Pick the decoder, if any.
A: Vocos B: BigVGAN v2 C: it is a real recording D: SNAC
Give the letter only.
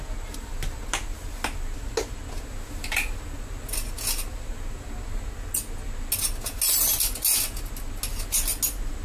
C